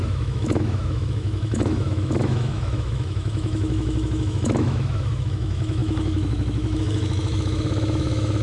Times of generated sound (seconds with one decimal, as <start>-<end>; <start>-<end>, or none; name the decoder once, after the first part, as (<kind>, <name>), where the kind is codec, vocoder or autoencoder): 0.0-8.4 (autoencoder, DAC-VAE)